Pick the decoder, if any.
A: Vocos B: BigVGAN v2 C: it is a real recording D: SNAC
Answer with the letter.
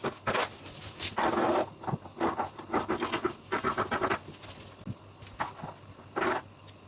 C